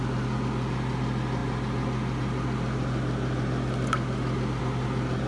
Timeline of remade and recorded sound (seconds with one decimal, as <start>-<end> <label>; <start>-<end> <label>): 0.0-5.3 recorded